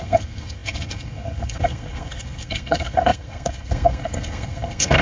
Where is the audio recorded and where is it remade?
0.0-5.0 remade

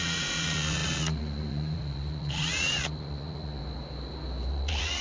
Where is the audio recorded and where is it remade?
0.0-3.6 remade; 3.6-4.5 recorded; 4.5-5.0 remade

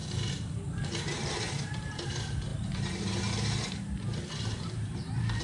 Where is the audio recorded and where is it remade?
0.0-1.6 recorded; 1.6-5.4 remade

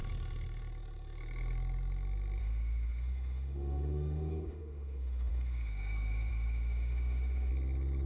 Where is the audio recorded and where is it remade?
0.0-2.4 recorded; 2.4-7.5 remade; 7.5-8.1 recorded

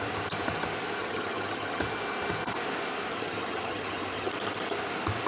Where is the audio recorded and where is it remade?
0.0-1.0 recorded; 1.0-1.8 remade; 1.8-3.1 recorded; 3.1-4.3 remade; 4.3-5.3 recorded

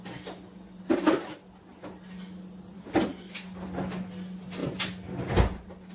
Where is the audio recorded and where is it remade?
0.0-5.9 recorded

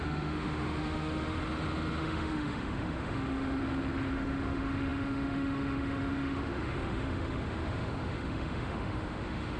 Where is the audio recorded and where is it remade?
0.0-1.4 remade; 1.4-2.0 recorded; 2.0-3.6 remade; 3.6-4.1 recorded; 4.1-9.6 remade

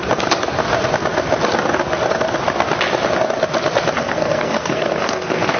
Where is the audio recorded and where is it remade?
0.0-4.0 recorded; 4.0-5.6 remade